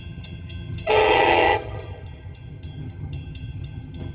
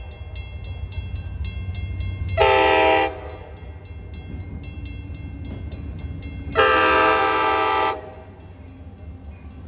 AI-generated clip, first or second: first